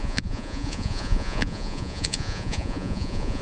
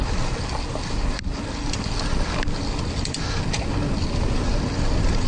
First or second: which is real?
second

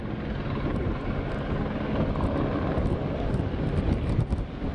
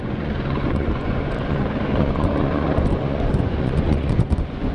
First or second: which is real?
first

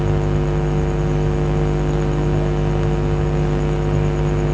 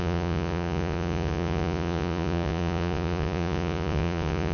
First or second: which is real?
first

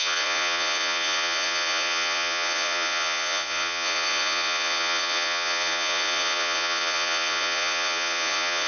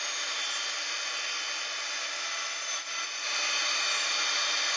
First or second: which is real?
second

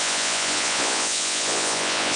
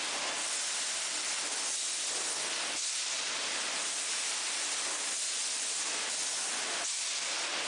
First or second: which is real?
second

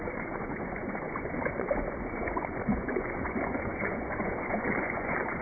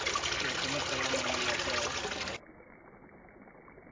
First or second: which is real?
second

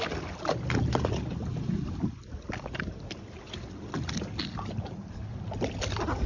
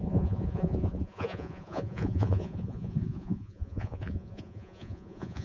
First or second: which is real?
first